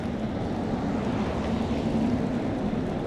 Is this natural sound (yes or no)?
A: yes